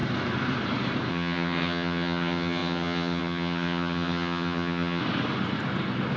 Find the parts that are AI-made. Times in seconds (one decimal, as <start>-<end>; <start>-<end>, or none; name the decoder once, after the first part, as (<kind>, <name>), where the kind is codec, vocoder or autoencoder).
1.1-5.0 (vocoder, HiFi-GAN)